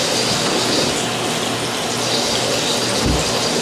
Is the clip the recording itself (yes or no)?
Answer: yes